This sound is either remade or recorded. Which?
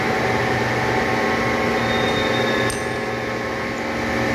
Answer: recorded